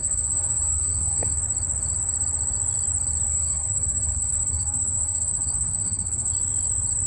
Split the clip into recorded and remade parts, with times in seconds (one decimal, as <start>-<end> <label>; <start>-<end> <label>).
0.0-1.4 remade; 1.4-3.3 recorded; 3.3-6.3 remade; 6.3-7.1 recorded